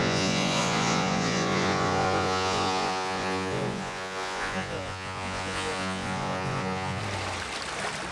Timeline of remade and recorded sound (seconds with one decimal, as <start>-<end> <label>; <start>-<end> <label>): 0.0-7.0 remade; 7.0-8.1 recorded